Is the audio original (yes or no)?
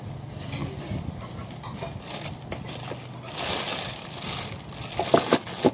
yes